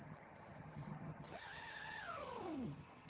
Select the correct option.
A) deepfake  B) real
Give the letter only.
A